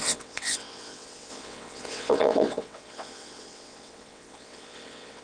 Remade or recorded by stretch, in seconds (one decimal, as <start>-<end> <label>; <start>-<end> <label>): 0.0-5.2 remade

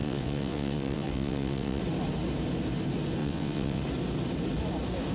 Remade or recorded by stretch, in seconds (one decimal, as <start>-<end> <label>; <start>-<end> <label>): 0.0-1.8 remade; 1.8-3.2 recorded; 3.2-3.8 remade; 3.8-5.1 recorded

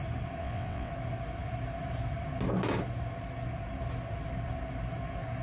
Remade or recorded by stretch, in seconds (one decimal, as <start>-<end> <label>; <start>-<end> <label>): 0.0-0.4 recorded; 0.4-0.9 remade; 0.9-5.4 recorded